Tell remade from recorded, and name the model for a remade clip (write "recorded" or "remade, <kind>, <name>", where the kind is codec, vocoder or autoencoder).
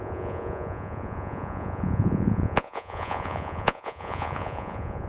remade, vocoder, Vocos